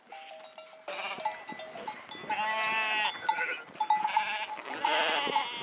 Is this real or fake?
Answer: real